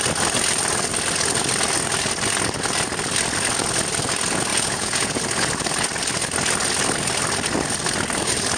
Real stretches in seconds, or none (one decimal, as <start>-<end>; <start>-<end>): 0.0-4.5; 5.2-8.6